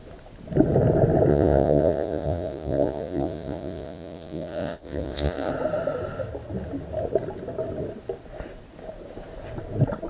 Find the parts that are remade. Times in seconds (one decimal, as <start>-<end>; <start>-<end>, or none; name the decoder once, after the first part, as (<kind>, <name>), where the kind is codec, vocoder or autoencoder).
1.3-5.5 (vocoder, Vocos)